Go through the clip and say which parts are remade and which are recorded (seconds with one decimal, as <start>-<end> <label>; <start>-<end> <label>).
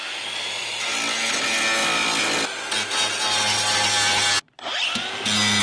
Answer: 0.0-5.6 recorded